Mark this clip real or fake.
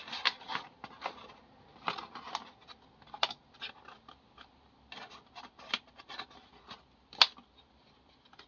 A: real